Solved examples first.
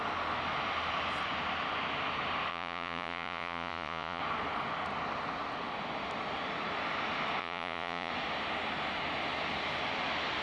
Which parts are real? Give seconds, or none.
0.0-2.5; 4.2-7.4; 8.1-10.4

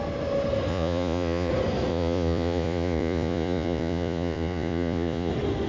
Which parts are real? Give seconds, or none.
0.0-0.7; 1.5-1.9; 5.3-5.7

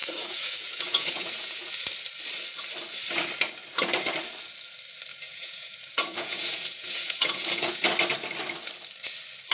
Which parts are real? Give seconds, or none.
1.7-5.1; 7.8-9.5

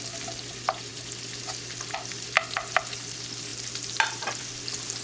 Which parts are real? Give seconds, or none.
0.0-5.0